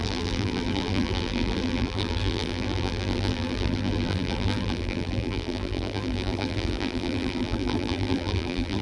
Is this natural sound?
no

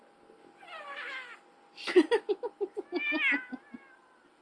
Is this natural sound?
yes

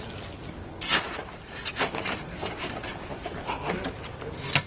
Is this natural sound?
yes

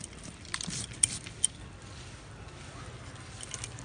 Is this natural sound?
no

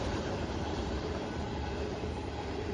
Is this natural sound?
no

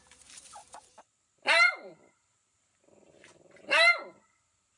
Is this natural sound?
no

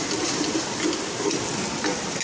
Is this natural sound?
yes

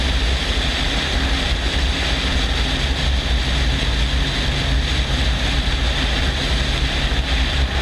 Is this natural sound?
yes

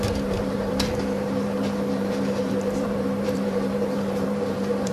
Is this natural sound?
no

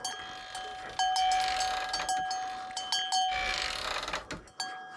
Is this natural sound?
yes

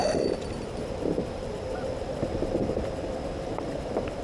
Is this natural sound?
no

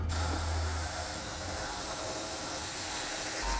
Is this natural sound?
yes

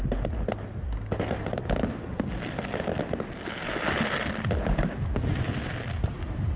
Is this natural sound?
yes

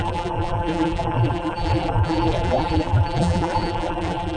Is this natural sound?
no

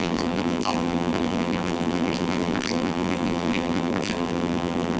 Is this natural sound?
no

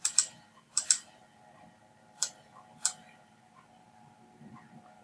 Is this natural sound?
no